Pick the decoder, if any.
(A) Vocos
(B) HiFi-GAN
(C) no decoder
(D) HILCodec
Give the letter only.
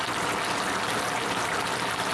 C